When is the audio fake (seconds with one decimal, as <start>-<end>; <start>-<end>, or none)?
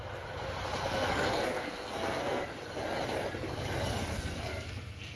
0.8-2.4; 4.1-5.2